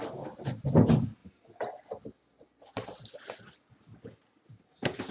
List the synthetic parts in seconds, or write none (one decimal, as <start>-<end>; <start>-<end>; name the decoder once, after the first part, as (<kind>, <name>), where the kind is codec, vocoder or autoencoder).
none